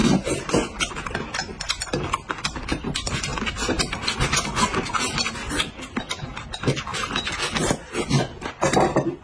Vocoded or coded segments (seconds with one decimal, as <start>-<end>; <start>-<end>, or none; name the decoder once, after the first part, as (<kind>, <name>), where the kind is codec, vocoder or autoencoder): 6.9-8.5 (vocoder, BigVGAN v2)